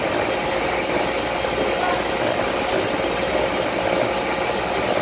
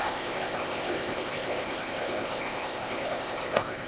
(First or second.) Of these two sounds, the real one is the first